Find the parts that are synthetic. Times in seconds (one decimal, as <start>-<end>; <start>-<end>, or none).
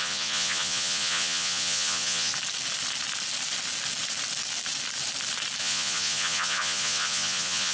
0.0-2.3; 5.6-7.7